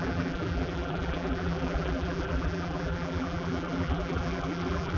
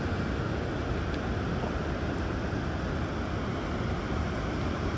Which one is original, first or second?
second